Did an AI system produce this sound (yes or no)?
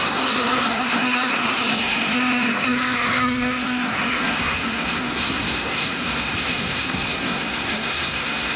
yes